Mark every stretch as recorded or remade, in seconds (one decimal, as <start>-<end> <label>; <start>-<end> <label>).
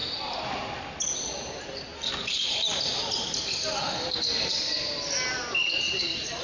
0.0-6.4 recorded